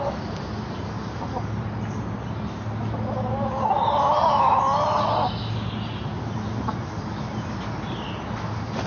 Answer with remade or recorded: recorded